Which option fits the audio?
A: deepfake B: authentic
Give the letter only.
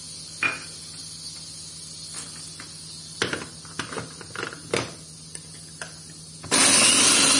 B